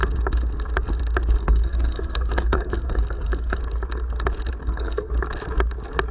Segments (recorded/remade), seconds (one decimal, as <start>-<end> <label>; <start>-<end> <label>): 0.0-1.4 recorded; 1.4-3.6 remade; 3.6-4.6 recorded; 4.6-5.1 remade; 5.1-6.1 recorded